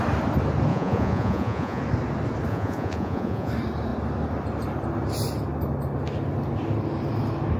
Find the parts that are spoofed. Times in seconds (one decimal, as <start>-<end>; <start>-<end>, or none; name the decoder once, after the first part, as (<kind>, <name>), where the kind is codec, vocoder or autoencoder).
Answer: 0.7-1.8 (vocoder, Vocos); 2.5-3.5

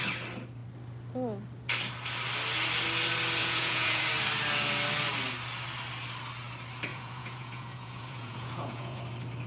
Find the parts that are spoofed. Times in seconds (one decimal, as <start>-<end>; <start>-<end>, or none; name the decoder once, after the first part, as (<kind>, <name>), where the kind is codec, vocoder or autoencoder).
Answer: 3.4-4.0 (vocoder, Vocos); 6.9-9.0

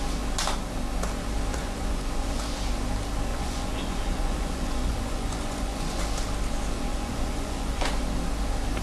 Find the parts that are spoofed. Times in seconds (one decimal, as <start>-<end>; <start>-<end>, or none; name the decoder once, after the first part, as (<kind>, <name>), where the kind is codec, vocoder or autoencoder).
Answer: 1.5-2.4 (vocoder, Vocos); 3.3-6.0; 6.9-7.9

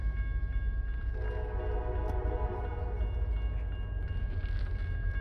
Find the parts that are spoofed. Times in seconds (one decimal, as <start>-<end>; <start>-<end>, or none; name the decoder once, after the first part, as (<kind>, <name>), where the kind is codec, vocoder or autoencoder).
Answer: none

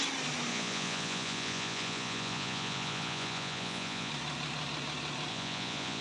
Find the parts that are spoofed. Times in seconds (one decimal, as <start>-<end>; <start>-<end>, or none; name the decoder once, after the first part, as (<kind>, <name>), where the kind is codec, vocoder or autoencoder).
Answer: 0.5-4.1 (vocoder, Vocos); 5.3-6.0

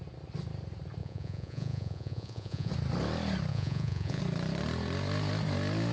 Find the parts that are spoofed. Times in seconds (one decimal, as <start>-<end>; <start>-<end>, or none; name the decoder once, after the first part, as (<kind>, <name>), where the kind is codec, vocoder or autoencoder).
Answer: 1.0-2.7 (vocoder, Vocos); 3.5-4.2

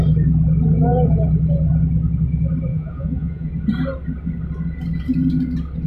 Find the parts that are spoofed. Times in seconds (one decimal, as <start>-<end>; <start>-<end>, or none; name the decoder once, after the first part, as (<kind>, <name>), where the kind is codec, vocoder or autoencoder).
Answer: 2.7-3.5 (vocoder, Vocos)

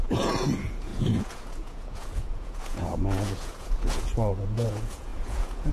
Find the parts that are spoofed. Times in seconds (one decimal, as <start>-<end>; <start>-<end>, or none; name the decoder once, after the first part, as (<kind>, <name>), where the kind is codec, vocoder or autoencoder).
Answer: 0.0-5.7 (vocoder, Vocos)